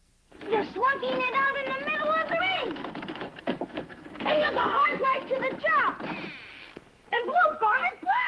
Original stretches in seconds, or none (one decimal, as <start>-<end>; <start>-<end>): 1.1-2.4; 5.3-6.5